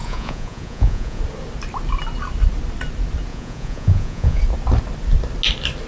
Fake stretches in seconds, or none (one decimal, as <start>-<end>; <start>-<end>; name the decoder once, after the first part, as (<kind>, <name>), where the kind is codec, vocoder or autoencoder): 0.0-1.2 (vocoder, Vocos); 3.3-4.4